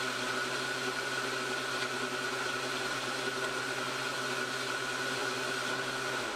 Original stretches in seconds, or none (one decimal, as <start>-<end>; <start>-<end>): 0.0-6.4